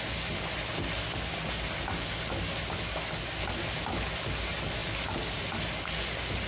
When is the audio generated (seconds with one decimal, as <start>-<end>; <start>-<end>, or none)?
none